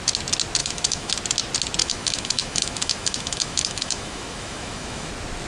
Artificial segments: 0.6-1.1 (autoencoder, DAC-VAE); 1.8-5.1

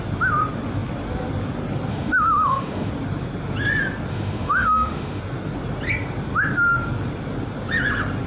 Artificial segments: 1.9-2.9 (autoencoder, DAC-VAE); 4.1-5.2

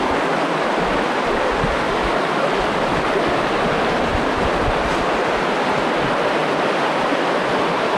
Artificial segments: none

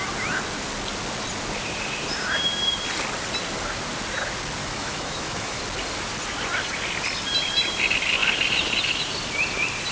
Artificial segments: 4.6-5.6 (autoencoder, DAC-VAE)

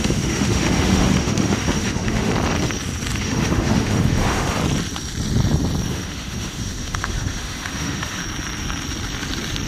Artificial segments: 0.0-2.3 (autoencoder, DAC-VAE); 3.2-4.6; 5.9-8.2

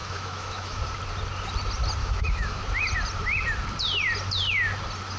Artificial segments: 0.0-0.8 (autoencoder, DAC-VAE); 2.0-2.6

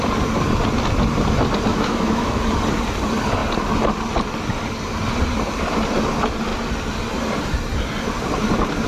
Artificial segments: 1.7-2.4 (autoencoder, DAC-VAE)

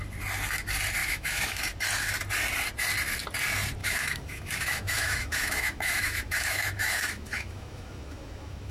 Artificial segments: 1.0-1.6 (autoencoder, DAC-VAE); 3.8-8.7